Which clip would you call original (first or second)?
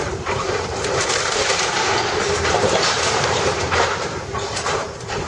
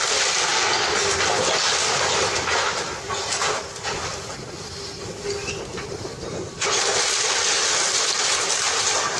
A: second